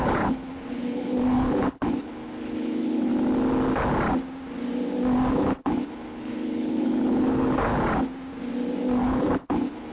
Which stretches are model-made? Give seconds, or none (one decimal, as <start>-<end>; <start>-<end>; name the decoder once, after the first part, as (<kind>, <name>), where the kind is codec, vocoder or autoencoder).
0.0-3.1 (codec, HILCodec); 5.3-7.7; 9.0-9.9